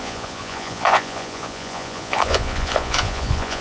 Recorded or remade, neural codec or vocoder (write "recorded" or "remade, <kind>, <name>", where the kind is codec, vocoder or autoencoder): remade, vocoder, Vocos